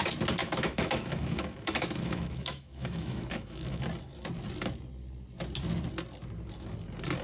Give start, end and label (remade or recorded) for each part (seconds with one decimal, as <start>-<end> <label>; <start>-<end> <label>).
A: 0.0-0.4 recorded; 0.4-3.8 remade; 3.8-7.2 recorded